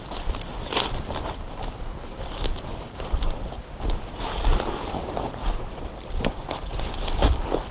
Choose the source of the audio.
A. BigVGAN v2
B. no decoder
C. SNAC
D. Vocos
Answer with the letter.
B